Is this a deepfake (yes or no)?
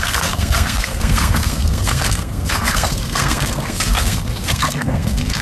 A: yes